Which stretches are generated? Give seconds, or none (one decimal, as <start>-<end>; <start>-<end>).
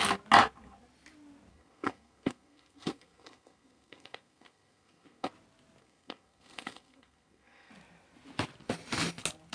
1.5-5.3; 5.8-7.7